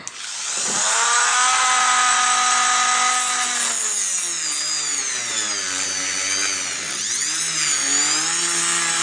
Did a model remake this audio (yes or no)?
no